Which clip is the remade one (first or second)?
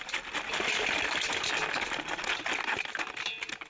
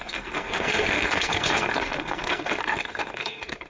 second